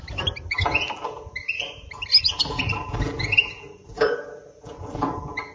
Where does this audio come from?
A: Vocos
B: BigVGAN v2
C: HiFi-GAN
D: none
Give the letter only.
D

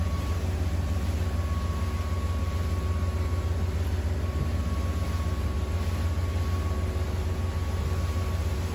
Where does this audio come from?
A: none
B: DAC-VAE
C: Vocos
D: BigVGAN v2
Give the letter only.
A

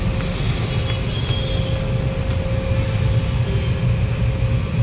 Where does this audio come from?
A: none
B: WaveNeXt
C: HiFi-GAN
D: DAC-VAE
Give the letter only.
A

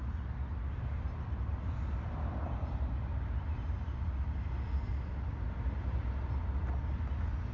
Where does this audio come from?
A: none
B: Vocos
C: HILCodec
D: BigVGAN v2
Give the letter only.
A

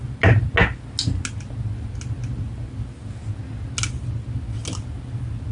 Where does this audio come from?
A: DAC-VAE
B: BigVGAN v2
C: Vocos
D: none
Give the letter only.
D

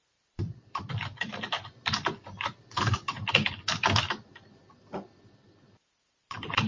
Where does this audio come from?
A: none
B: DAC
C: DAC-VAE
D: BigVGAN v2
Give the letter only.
D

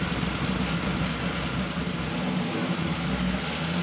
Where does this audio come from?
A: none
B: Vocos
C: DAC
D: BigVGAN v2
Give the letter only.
A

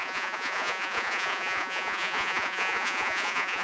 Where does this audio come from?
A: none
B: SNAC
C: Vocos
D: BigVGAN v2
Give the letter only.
C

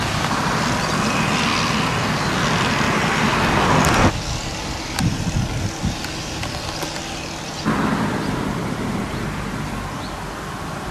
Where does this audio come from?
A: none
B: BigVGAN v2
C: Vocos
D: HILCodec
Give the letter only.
A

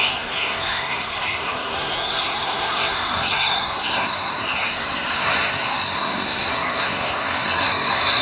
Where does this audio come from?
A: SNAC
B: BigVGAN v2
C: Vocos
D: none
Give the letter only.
A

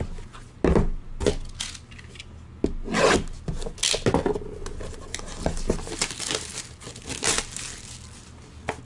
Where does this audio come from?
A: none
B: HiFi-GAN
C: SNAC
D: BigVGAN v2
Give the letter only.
A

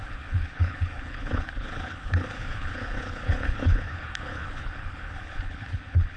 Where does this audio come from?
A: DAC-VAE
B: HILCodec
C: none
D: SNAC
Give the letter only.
B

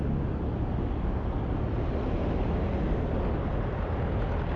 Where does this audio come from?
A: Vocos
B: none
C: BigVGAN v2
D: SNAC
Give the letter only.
B